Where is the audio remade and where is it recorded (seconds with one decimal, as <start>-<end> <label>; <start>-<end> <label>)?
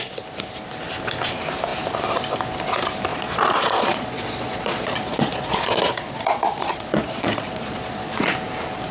0.0-3.1 recorded; 3.1-8.3 remade; 8.3-8.9 recorded